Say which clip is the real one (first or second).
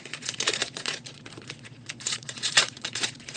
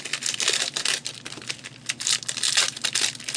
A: second